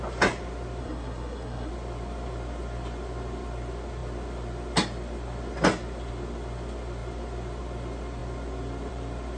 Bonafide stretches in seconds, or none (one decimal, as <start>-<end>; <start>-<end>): 0.0-0.8; 1.7-9.4